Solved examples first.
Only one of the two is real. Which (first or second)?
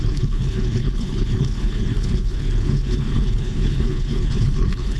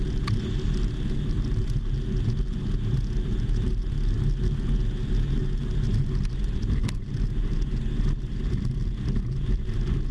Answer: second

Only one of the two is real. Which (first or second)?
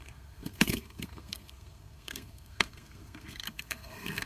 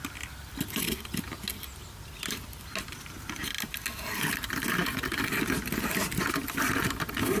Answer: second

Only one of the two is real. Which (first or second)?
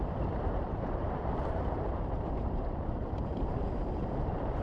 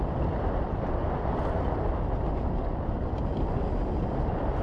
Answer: second